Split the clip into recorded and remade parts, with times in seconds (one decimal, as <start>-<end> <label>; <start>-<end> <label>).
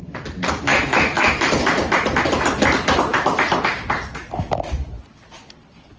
0.0-0.7 recorded; 0.7-1.4 remade; 1.4-6.0 recorded